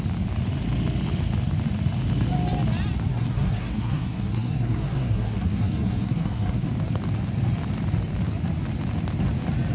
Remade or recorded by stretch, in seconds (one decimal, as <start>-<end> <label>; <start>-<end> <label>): 0.0-3.1 recorded; 3.1-6.7 remade; 6.7-9.7 recorded